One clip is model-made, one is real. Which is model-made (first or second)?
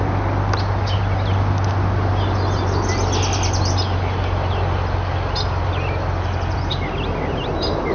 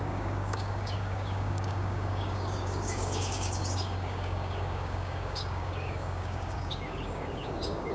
second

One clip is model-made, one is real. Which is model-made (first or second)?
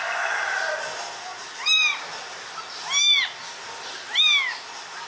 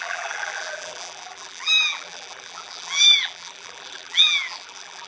second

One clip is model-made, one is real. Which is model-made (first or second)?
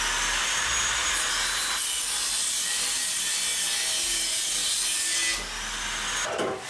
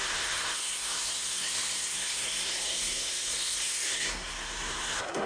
second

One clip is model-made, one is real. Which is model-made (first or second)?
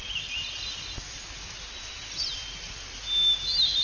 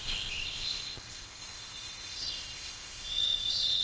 second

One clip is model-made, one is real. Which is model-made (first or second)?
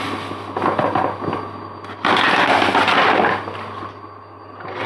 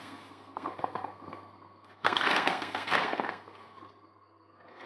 second